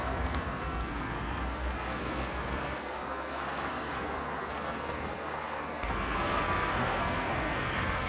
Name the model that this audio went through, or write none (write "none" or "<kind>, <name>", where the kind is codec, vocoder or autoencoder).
codec, SNAC